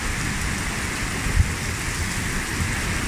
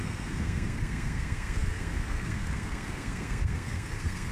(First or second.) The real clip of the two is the first